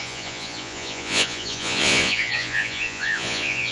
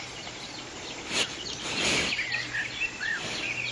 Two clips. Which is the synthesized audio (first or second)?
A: first